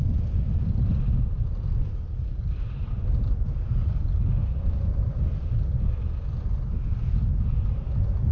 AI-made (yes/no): no